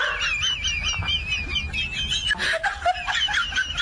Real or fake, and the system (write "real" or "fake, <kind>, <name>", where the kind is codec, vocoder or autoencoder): real